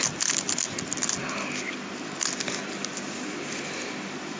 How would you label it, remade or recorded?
recorded